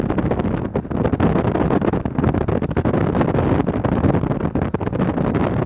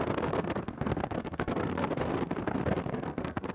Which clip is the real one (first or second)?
first